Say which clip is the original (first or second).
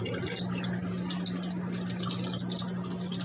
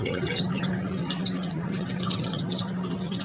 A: first